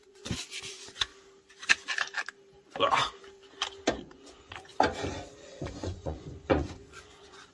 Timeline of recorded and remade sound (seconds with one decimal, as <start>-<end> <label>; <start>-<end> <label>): 0.0-1.1 remade; 1.1-3.9 recorded; 3.9-4.7 remade; 4.7-5.4 recorded; 5.4-7.5 remade